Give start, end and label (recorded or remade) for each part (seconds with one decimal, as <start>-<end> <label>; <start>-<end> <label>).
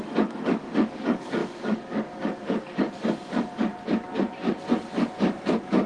0.0-3.7 remade; 3.7-5.9 recorded